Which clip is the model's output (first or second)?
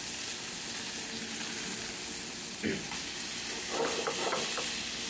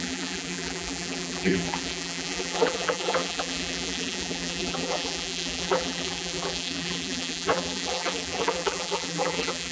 second